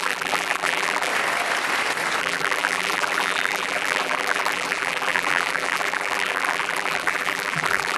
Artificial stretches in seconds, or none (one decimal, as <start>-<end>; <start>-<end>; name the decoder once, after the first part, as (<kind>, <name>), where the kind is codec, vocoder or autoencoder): 0.0-1.1 (vocoder, BigVGAN v2); 2.2-8.0